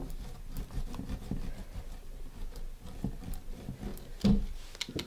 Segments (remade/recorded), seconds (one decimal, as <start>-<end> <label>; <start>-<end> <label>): 0.0-5.1 recorded